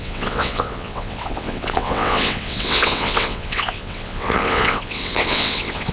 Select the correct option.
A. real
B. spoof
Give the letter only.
B